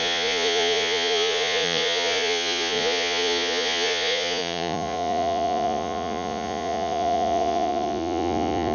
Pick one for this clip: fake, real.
fake